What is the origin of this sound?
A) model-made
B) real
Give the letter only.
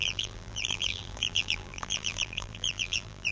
A